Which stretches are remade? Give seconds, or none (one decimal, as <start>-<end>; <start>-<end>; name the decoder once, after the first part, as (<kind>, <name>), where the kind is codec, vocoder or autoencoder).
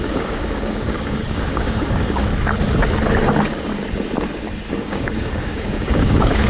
0.0-2.3 (codec, DAC); 4.8-6.5